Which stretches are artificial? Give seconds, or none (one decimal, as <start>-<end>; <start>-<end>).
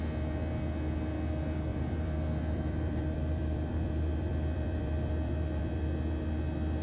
1.7-5.8